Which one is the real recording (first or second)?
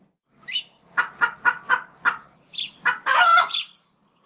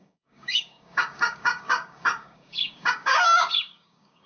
first